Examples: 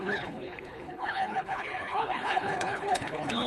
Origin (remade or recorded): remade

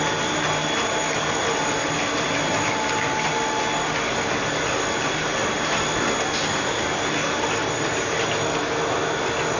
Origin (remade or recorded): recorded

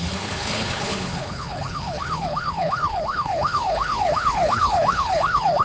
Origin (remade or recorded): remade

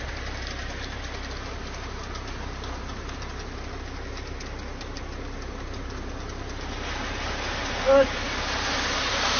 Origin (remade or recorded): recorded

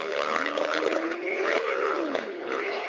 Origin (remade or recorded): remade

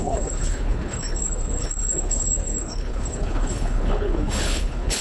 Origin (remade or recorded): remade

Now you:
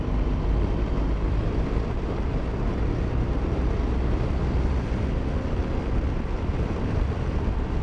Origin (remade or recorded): recorded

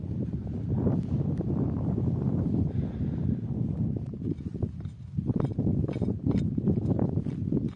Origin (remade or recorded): recorded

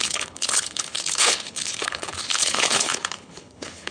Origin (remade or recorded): remade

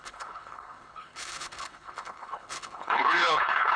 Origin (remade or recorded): remade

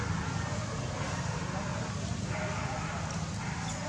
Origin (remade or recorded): recorded